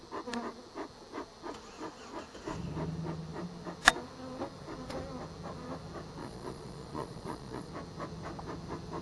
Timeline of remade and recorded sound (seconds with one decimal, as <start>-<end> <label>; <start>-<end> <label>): 0.0-6.2 recorded; 6.2-7.7 remade; 7.7-9.0 recorded